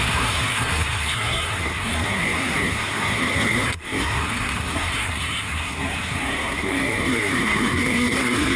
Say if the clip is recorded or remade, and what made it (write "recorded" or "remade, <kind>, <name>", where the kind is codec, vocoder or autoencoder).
remade, codec, SNAC